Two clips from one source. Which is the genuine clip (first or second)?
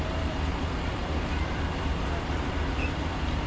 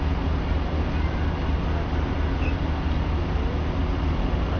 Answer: second